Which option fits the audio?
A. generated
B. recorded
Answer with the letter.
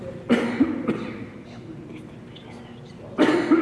B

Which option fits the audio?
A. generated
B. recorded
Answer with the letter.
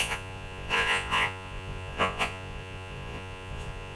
A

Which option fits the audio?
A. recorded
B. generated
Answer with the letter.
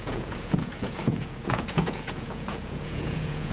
B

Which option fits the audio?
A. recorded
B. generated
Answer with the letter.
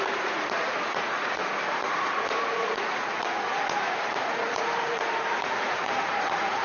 B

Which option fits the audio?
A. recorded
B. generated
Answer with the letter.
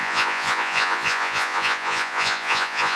B